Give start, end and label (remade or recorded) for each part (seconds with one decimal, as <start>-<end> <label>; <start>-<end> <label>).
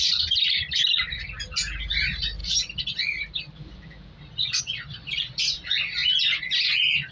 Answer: 0.0-6.0 remade; 6.0-7.1 recorded